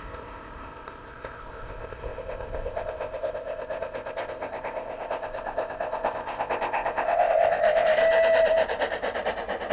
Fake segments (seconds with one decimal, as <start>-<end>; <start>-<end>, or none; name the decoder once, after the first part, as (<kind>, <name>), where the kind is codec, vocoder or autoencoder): 0.0-8.0 (codec, ZipCodec)